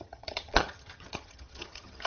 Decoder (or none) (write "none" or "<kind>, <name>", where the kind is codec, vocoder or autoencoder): vocoder, HiFi-GAN